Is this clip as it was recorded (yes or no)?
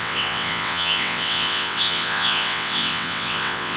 no